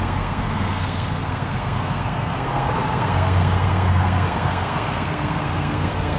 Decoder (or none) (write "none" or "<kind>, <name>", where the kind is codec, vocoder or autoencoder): codec, SNAC